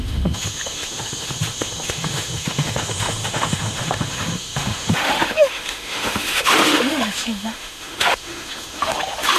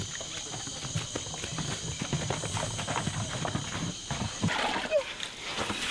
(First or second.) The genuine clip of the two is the second